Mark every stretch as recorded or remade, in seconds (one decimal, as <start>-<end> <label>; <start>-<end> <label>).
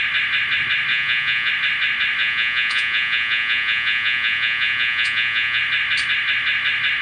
0.0-0.9 recorded; 0.9-1.5 remade; 1.5-2.2 recorded; 2.2-5.6 remade; 5.6-7.0 recorded